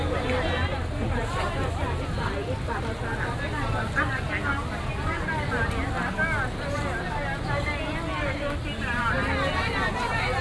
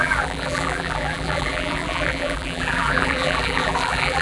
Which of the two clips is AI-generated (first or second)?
second